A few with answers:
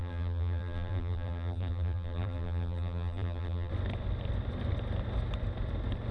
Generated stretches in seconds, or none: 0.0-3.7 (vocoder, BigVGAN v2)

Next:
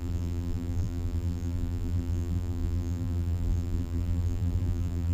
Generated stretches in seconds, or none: 0.0-5.1 (vocoder, BigVGAN v2)

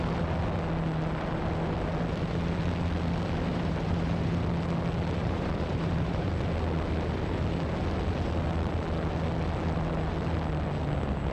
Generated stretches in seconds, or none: 3.5-4.5 (vocoder, BigVGAN v2); 5.2-6.3

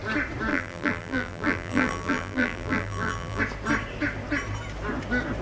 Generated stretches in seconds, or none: 0.5-3.4 (vocoder, BigVGAN v2)